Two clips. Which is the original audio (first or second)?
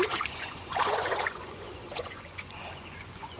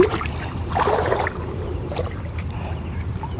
second